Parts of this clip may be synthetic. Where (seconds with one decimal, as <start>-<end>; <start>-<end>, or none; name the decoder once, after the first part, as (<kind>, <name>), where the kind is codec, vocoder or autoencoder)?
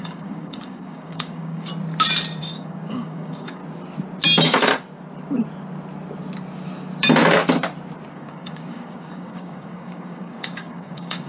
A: 0.0-1.7 (codec, DAC); 2.4-3.6; 8.1-11.3